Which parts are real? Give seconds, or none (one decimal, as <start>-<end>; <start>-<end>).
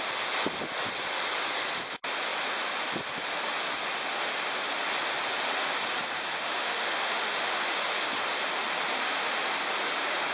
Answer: 0.0-6.3; 7.5-8.9; 9.5-10.3